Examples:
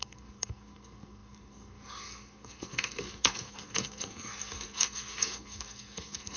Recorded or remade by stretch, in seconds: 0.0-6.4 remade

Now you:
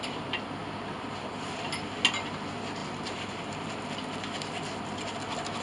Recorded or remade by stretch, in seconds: 0.0-5.6 recorded

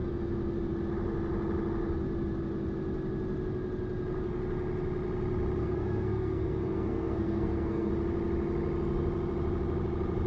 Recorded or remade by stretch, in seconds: 0.0-5.6 recorded; 5.6-7.9 remade; 7.9-10.3 recorded

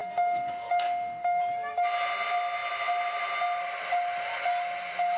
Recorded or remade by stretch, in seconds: 0.0-1.4 remade; 1.4-5.2 recorded